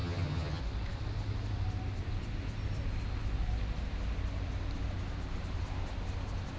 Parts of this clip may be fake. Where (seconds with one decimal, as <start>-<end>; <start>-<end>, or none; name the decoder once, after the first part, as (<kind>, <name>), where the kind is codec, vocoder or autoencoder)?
0.0-0.6 (vocoder, HiFi-GAN)